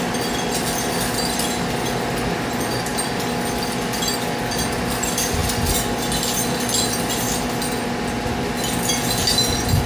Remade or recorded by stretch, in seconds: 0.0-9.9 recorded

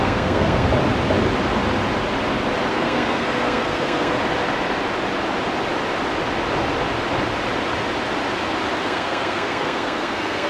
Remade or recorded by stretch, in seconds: 0.0-0.7 remade; 0.7-2.7 recorded; 2.7-4.1 remade; 4.1-8.8 recorded; 8.8-10.5 remade

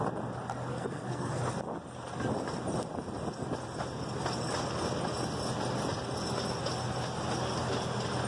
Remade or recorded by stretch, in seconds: 0.0-0.7 recorded; 0.7-1.4 remade; 1.4-8.3 recorded